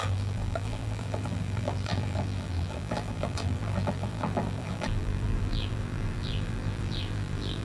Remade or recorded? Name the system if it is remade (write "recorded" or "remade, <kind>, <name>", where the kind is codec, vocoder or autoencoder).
remade, vocoder, BigVGAN v2